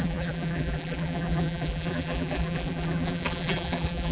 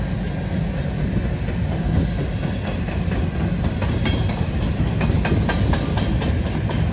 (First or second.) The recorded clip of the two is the second